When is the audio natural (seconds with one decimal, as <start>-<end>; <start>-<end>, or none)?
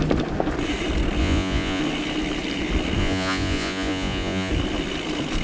0.0-1.2; 1.8-3.0; 4.5-5.4